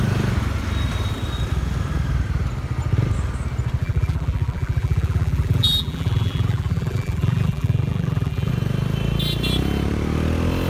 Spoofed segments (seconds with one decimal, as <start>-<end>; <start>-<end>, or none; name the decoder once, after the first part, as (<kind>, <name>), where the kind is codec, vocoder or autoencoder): 3.8-8.5 (vocoder, BigVGAN v2)